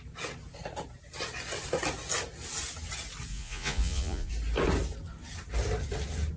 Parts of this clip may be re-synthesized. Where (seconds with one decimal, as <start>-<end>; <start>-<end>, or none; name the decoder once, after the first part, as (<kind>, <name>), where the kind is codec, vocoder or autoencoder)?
3.3-4.3 (vocoder, Vocos)